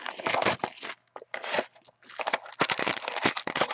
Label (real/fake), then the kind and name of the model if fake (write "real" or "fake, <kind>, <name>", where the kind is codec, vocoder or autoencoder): real